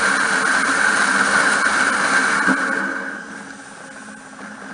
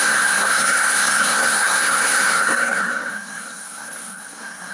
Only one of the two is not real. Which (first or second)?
second